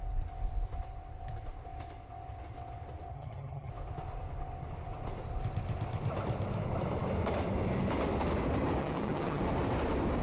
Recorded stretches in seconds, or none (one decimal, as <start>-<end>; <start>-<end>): 0.0-3.1; 3.7-8.8; 9.4-10.2